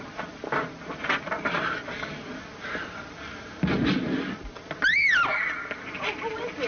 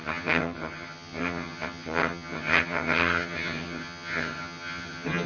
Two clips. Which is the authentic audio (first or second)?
first